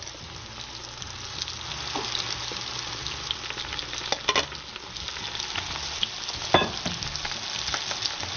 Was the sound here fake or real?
real